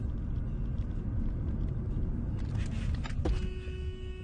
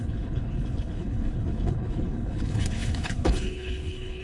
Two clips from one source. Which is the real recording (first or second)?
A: first